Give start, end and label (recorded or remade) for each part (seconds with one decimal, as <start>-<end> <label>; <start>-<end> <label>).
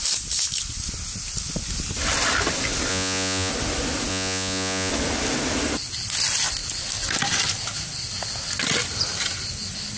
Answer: 0.0-2.9 recorded; 2.9-3.5 remade; 3.5-4.1 recorded; 4.1-4.9 remade; 4.9-10.0 recorded